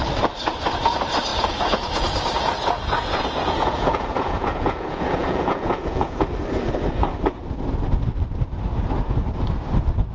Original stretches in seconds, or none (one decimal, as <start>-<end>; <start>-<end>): 0.0-1.3; 6.2-10.1